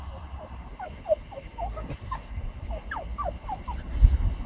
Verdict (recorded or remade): recorded